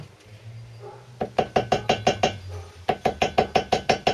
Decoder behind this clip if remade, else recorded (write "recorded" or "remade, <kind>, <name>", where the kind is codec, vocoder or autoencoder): recorded